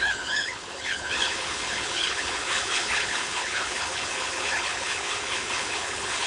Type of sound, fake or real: fake